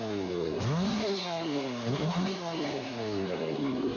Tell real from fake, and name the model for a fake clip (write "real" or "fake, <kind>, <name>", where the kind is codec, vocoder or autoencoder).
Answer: fake, codec, SNAC